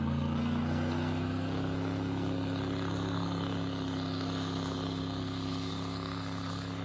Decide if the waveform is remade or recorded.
remade